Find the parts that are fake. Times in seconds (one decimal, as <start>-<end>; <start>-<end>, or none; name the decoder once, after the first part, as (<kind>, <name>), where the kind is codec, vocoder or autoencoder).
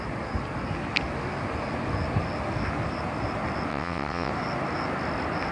3.7-4.3 (vocoder, WaveNeXt)